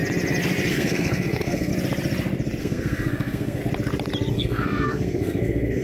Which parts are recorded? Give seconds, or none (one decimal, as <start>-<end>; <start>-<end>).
0.0-0.7; 1.7-2.6; 3.6-4.3